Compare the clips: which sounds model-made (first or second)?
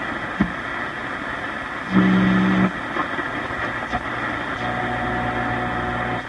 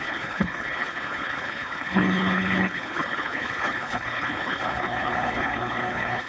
second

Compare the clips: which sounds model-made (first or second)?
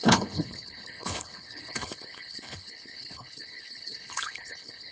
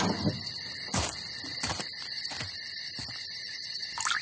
first